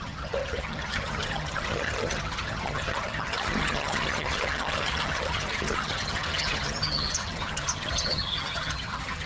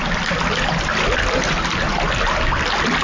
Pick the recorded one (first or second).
second